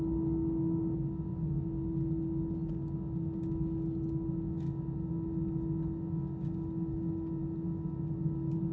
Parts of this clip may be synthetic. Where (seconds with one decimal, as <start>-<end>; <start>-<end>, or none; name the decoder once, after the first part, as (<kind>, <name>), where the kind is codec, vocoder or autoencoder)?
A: none